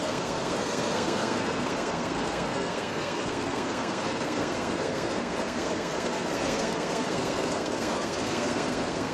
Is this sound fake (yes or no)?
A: yes